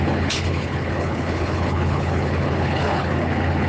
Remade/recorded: remade